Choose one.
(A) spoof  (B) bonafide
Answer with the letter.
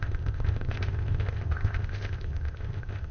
A